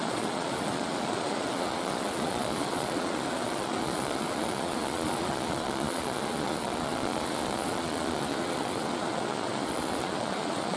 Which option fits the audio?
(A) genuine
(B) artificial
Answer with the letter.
B